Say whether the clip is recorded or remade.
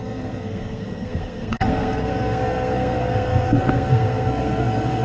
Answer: remade